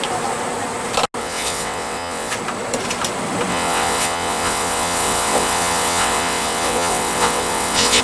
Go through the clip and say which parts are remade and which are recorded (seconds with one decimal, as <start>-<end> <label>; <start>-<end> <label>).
0.0-1.2 recorded; 1.2-2.3 remade; 2.3-3.5 recorded; 3.5-8.0 remade